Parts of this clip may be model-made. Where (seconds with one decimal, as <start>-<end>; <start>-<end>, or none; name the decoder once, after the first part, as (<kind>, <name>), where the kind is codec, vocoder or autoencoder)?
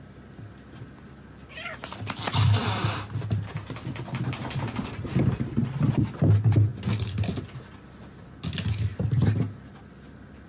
none